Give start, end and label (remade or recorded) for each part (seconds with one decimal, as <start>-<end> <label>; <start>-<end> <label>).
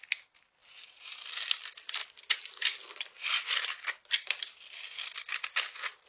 0.0-6.1 recorded